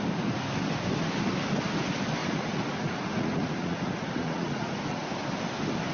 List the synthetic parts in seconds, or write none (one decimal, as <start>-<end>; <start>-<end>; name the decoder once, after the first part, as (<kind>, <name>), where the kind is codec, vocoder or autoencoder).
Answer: 2.2-5.1 (vocoder, Vocos)